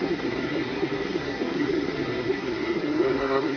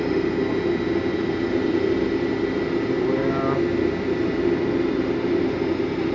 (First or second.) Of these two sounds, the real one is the second